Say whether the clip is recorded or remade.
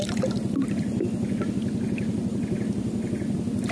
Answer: recorded